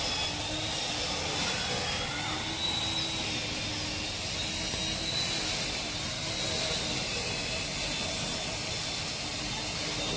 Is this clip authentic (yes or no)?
yes